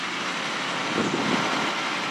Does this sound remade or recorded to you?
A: recorded